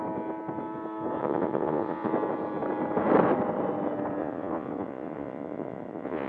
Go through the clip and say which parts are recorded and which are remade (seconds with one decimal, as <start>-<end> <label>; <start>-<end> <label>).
0.0-1.2 recorded; 1.2-2.1 remade; 2.1-4.2 recorded; 4.2-6.3 remade